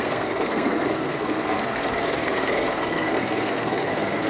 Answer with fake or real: fake